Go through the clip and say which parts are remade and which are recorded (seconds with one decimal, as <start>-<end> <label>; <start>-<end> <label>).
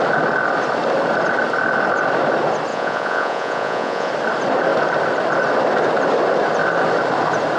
0.0-2.7 recorded; 2.7-4.1 remade; 4.1-7.6 recorded